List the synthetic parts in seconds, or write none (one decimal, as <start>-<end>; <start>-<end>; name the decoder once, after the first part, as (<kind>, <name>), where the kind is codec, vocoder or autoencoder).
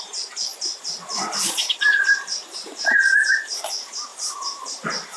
0.5-3.6 (vocoder, BigVGAN v2); 4.1-5.2